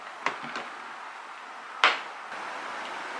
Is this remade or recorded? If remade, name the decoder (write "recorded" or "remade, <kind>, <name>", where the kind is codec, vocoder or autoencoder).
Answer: recorded